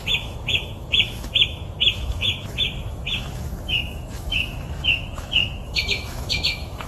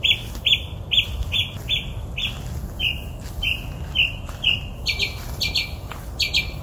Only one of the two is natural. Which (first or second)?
second